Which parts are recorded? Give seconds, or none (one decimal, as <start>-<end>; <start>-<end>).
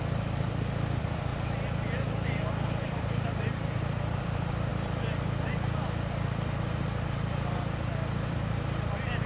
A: 1.3-2.8; 4.7-8.3